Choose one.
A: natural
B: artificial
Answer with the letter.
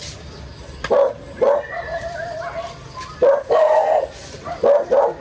A